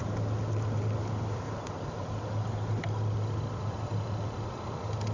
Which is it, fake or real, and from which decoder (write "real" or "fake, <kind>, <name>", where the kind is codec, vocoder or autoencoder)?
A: real